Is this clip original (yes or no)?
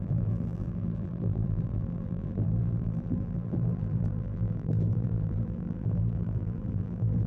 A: no